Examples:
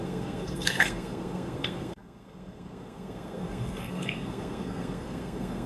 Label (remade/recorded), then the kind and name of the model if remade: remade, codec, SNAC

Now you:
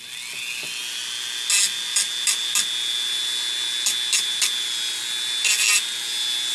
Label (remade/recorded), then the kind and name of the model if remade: recorded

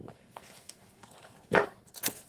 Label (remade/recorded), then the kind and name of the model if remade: remade, codec, SNAC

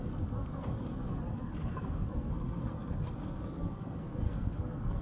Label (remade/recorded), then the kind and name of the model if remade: remade, codec, SNAC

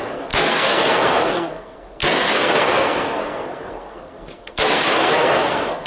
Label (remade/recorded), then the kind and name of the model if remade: remade, codec, SNAC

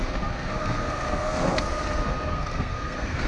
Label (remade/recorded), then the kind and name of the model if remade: remade, codec, SNAC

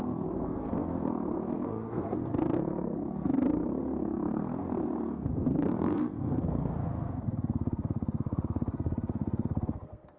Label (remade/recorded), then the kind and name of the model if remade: remade, codec, SNAC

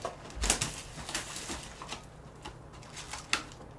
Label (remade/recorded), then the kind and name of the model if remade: recorded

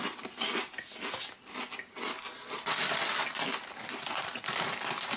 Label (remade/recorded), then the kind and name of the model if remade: recorded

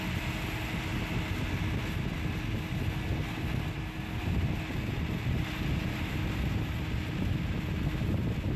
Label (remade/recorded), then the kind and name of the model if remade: recorded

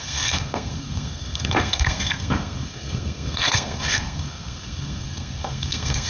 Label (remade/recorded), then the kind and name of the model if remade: remade, codec, SNAC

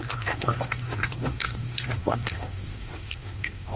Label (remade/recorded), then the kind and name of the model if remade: remade, codec, SNAC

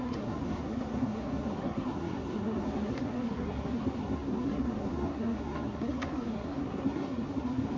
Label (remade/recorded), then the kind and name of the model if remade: remade, codec, SNAC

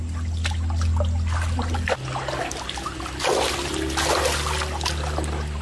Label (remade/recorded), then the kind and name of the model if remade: recorded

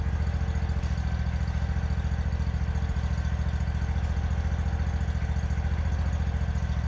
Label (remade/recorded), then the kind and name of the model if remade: recorded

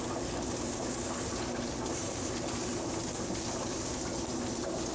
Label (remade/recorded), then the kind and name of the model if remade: recorded